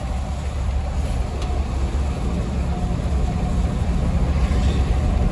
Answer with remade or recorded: recorded